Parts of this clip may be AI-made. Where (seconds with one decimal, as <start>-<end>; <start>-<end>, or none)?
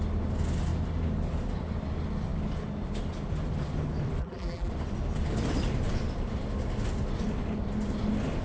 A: 4.2-4.7